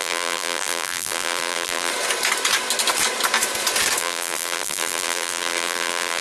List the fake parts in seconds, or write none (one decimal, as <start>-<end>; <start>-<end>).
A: 0.0-1.9; 4.0-6.2